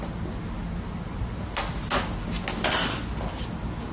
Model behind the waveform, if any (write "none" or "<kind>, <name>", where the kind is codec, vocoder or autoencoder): none